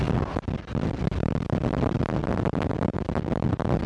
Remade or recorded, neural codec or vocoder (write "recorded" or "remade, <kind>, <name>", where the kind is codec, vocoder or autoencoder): recorded